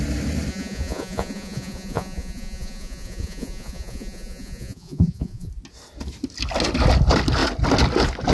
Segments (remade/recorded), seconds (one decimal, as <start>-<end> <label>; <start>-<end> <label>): 0.0-0.5 recorded; 0.5-5.5 remade; 5.5-8.3 recorded